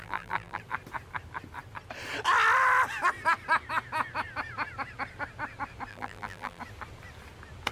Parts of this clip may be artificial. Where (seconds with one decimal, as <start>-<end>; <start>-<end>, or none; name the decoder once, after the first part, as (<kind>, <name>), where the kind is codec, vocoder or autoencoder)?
0.0-0.6 (vocoder, BigVGAN v2); 5.9-6.6